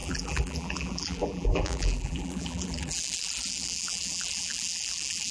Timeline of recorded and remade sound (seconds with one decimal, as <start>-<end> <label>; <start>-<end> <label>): 0.0-5.3 remade

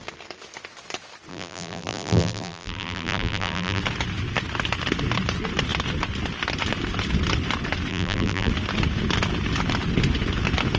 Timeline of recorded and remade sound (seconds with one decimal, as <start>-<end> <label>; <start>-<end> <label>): 0.0-1.3 recorded; 1.3-3.8 remade; 3.8-7.9 recorded; 7.9-8.5 remade; 8.5-10.8 recorded

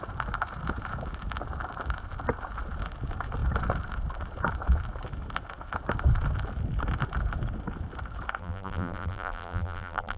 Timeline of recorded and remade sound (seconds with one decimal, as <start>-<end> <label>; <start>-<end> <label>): 0.0-8.4 recorded; 8.4-10.2 remade

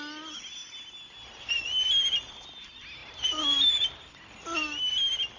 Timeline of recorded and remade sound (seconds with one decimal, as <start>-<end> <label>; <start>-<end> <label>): 0.0-3.0 recorded; 3.0-4.1 remade; 4.1-5.4 recorded

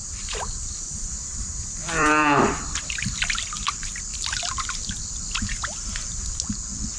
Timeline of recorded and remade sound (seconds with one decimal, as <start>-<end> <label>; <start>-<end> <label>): 0.0-3.0 remade; 3.0-7.0 recorded

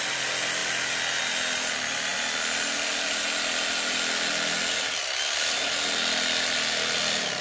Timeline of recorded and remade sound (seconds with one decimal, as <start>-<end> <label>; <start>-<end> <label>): 0.0-7.4 recorded

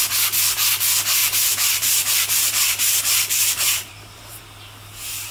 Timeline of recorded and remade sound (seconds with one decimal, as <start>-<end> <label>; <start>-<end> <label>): 0.0-1.2 recorded; 1.2-4.4 remade; 4.4-5.3 recorded

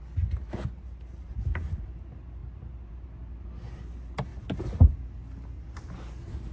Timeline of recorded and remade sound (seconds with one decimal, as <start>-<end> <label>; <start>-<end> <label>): 0.0-2.4 recorded; 2.4-2.9 remade; 2.9-6.5 recorded